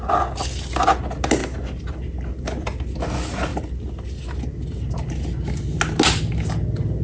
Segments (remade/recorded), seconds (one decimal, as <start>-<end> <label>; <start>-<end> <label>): 0.0-7.0 recorded